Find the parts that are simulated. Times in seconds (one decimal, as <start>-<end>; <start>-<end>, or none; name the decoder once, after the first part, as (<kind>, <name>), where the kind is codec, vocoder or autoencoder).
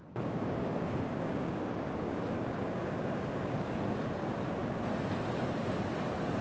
0.0-3.8 (codec, DAC)